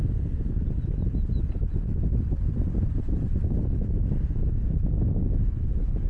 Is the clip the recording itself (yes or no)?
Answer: yes